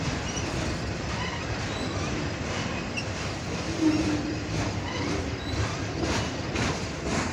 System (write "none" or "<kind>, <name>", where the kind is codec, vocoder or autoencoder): vocoder, BigVGAN v2